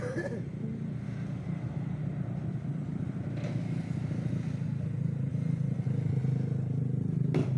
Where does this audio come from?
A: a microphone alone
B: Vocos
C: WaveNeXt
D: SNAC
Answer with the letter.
A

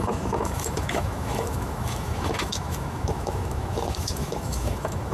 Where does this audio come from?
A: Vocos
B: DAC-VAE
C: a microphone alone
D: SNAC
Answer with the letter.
B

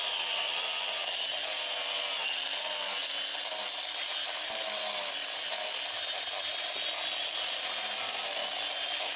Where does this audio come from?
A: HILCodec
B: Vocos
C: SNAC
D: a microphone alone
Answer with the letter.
D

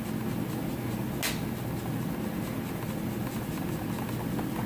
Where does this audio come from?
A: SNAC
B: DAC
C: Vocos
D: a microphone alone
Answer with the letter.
D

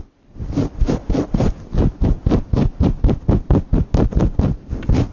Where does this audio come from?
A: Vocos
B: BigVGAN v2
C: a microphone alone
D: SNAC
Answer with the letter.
C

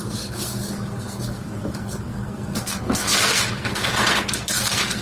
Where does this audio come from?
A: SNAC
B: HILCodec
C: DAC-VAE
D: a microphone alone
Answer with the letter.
A